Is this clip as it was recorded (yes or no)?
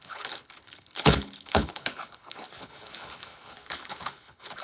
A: no